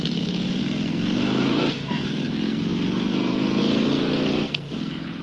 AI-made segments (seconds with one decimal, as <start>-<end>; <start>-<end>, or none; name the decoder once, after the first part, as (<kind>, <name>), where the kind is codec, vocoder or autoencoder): 0.0-5.2 (codec, SNAC)